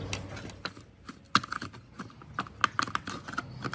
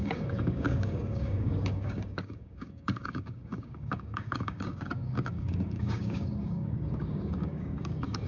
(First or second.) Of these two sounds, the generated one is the second